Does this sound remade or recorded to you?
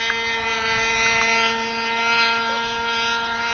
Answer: recorded